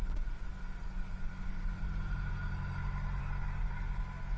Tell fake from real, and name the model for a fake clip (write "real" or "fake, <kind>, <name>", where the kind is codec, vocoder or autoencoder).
real